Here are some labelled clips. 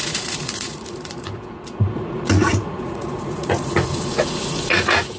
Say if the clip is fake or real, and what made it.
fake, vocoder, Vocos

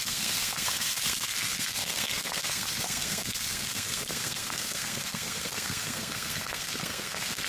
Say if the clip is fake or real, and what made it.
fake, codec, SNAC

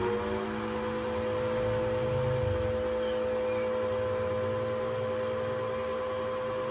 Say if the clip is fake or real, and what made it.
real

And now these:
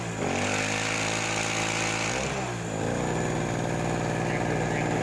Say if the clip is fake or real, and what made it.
real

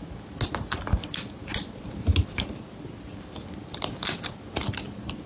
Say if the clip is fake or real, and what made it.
real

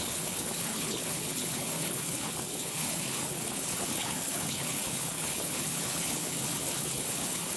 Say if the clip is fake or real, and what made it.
fake, codec, HILCodec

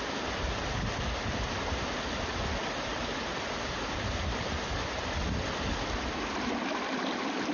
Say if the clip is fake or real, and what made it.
real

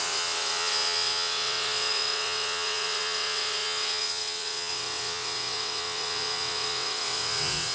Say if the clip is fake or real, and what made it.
fake, vocoder, WaveNeXt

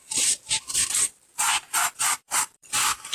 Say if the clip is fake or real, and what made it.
fake, vocoder, BigVGAN v2